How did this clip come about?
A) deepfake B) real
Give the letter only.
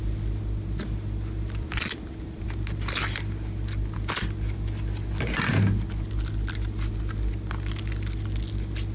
B